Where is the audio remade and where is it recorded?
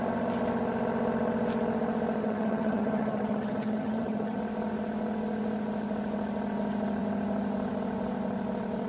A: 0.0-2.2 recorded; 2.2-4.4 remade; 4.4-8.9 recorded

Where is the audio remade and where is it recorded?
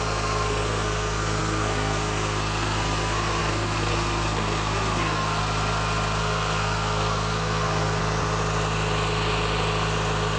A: 0.0-5.4 remade; 5.4-6.2 recorded; 6.2-8.0 remade; 8.0-10.4 recorded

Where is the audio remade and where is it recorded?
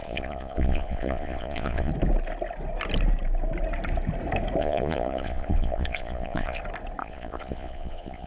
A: 0.0-1.9 remade; 1.9-4.6 recorded; 4.6-6.6 remade; 6.6-7.0 recorded; 7.0-8.3 remade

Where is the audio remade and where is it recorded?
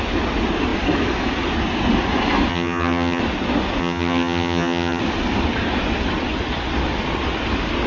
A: 0.0-2.5 recorded; 2.5-3.2 remade; 3.2-3.8 recorded; 3.8-5.0 remade; 5.0-7.9 recorded